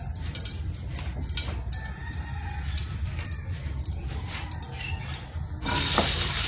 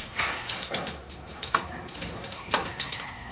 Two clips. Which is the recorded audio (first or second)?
first